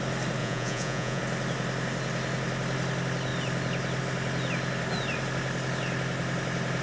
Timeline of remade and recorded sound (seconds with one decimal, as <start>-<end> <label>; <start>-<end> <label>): 0.0-0.4 recorded; 0.4-1.2 remade; 1.2-6.8 recorded